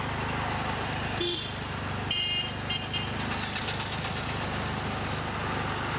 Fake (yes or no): no